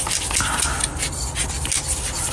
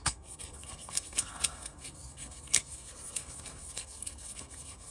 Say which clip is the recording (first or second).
first